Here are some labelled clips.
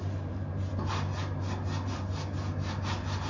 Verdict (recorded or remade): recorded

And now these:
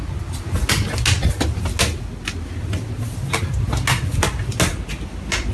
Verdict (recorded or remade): recorded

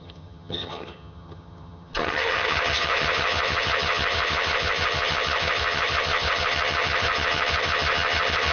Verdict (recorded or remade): remade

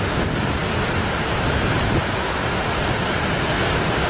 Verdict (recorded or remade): recorded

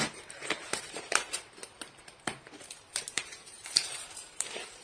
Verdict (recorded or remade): remade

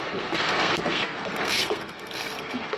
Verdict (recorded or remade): remade